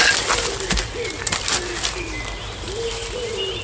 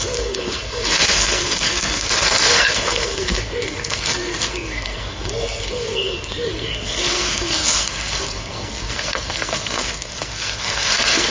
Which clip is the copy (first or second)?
second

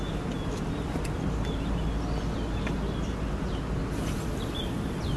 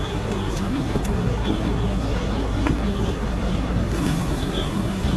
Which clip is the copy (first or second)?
second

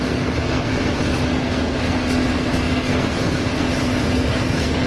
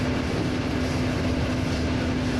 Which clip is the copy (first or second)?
first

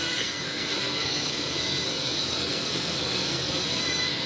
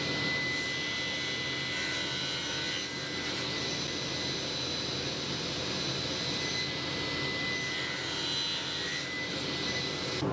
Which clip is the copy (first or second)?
first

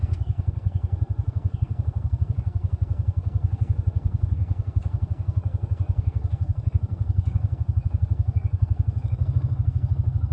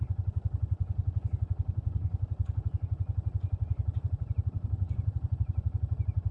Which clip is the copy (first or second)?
first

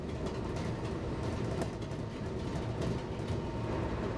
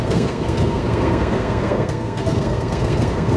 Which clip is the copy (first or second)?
second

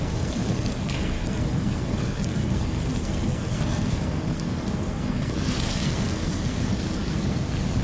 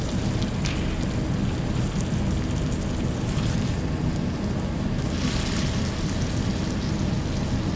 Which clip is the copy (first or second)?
first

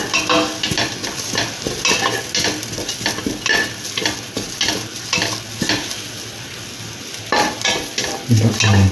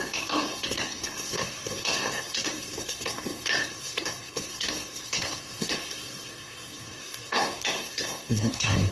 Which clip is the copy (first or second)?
second